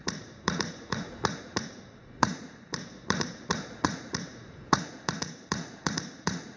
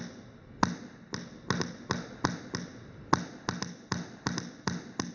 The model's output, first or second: first